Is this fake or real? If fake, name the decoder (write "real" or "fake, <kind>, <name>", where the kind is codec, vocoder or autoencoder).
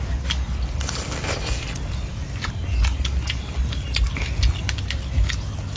real